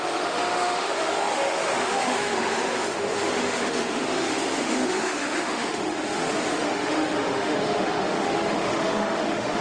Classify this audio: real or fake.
fake